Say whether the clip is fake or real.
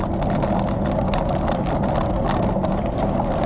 real